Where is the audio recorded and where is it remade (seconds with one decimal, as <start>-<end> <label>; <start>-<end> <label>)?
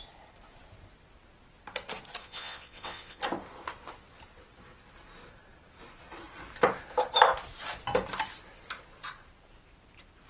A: 0.0-2.2 recorded; 2.2-3.2 remade; 3.2-10.3 recorded